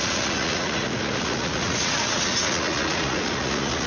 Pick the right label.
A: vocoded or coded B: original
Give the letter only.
A